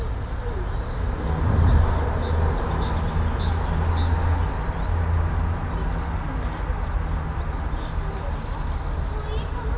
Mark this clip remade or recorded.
recorded